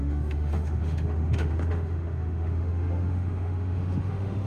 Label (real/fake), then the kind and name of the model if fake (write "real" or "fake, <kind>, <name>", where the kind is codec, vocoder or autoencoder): fake, autoencoder, DAC-VAE